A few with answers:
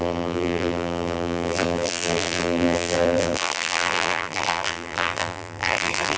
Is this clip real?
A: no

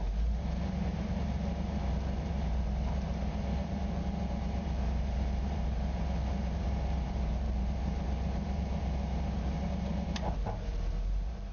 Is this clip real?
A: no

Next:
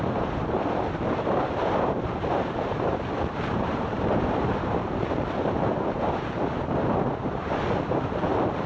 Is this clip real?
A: no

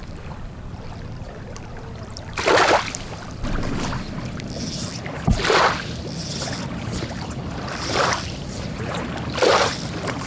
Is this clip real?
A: no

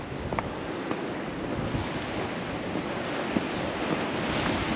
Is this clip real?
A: yes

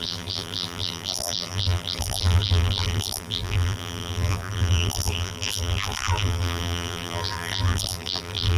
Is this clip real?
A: no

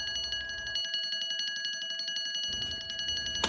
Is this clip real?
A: yes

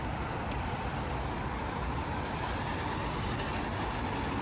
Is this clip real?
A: no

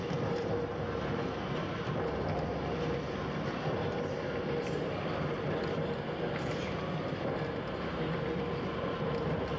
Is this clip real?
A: yes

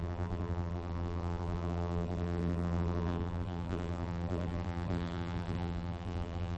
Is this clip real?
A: no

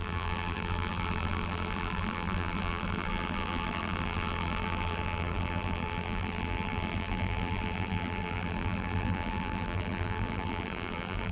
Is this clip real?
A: no